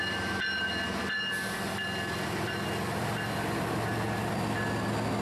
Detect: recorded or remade recorded